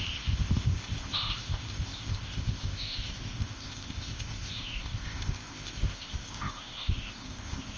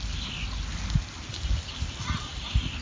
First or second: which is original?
second